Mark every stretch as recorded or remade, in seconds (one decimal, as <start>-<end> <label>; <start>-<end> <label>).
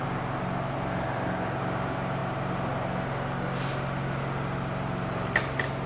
0.0-5.9 recorded